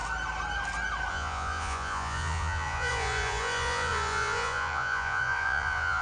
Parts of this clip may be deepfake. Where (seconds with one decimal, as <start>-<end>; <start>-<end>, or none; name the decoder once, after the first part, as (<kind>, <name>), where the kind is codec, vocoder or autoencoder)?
1.1-6.0 (vocoder, Vocos)